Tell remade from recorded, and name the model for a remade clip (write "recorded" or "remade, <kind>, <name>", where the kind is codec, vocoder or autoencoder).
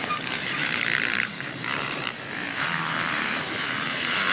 remade, vocoder, BigVGAN v2